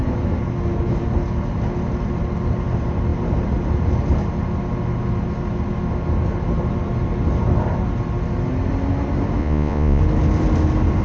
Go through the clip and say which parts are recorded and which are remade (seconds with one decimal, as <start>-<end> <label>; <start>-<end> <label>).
0.0-9.4 recorded; 9.4-10.0 remade; 10.0-11.0 recorded